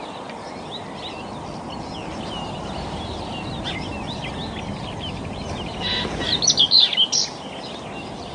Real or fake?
real